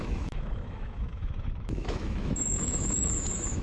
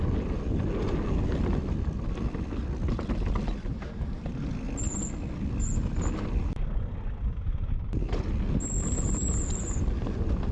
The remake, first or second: first